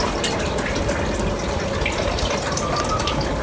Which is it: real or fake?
real